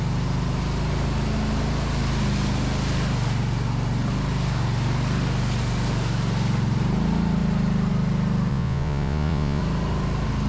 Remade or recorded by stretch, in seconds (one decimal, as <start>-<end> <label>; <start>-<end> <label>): 0.0-8.5 recorded; 8.5-9.6 remade; 9.6-10.5 recorded